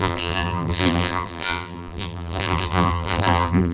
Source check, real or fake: fake